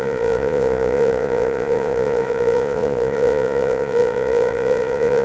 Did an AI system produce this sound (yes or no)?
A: yes